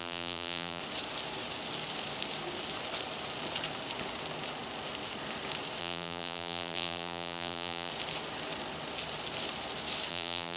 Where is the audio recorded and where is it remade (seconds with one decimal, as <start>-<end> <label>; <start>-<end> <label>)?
0.0-0.8 remade; 0.8-5.8 recorded; 5.8-7.9 remade; 7.9-10.1 recorded; 10.1-10.6 remade